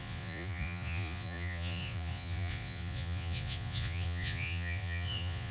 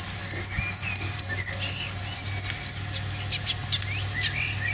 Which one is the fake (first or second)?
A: first